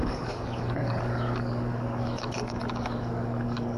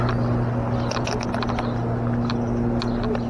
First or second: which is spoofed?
first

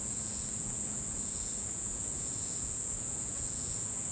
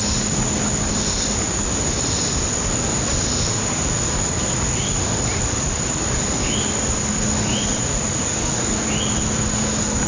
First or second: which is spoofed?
first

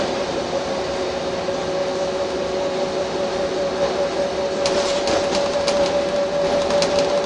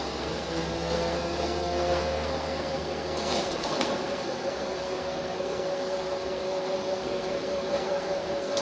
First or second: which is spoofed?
second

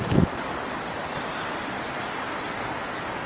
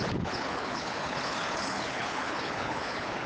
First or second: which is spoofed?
second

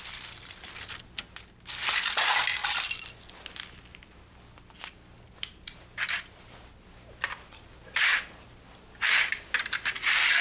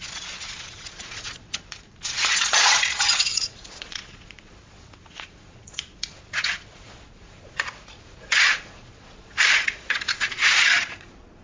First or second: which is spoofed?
second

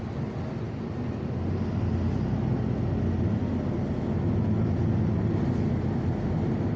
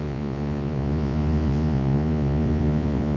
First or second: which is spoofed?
second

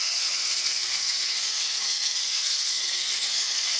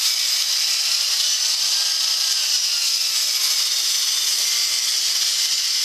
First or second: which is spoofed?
first